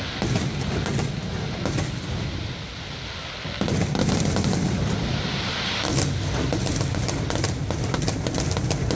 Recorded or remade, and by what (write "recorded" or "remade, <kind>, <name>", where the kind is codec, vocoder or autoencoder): recorded